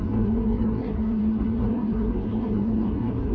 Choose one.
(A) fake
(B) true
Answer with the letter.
A